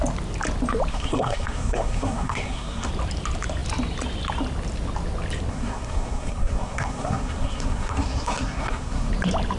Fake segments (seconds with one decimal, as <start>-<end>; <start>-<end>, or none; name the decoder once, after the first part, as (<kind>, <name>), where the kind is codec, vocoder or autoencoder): 0.9-2.9 (codec, SNAC); 5.5-9.1